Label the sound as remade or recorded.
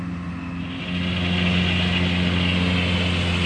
recorded